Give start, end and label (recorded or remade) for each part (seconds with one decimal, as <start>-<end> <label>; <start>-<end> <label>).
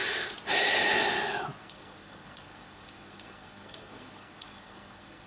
0.0-1.6 recorded; 1.6-5.3 remade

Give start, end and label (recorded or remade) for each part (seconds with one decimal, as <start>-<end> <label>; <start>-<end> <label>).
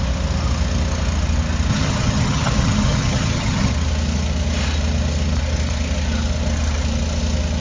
0.0-1.7 recorded; 1.7-3.7 remade; 3.7-7.6 recorded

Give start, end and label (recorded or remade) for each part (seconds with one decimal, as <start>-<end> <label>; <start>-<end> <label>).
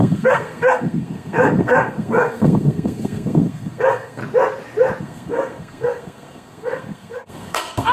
0.0-4.2 remade; 4.2-5.0 recorded; 5.0-7.9 remade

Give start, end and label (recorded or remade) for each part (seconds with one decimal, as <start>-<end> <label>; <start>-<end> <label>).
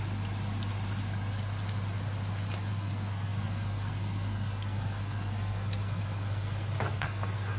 0.0-2.7 recorded; 2.7-7.6 remade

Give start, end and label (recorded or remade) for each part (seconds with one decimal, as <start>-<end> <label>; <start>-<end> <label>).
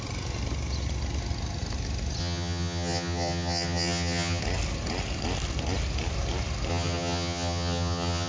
0.0-2.2 recorded; 2.2-4.4 remade; 4.4-6.7 recorded; 6.7-8.3 remade